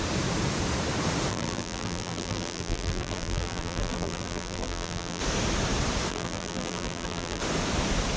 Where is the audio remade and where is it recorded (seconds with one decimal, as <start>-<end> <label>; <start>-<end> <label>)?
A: 0.0-1.3 recorded; 1.3-5.2 remade; 5.2-6.1 recorded; 6.1-7.4 remade; 7.4-8.2 recorded